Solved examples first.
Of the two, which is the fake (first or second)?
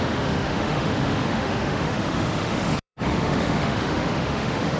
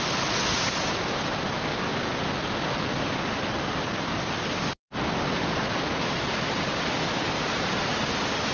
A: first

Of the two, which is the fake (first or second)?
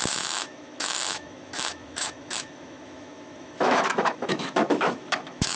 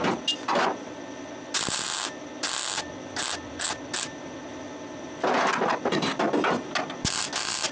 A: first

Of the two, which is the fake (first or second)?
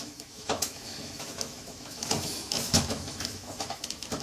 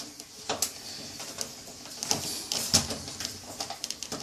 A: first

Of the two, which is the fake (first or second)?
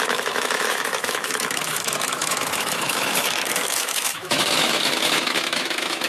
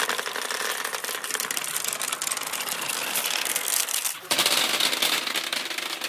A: first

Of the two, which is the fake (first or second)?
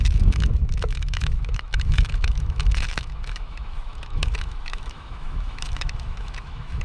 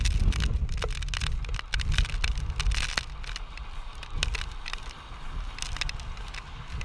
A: first